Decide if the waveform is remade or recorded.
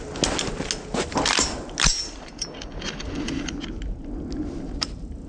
recorded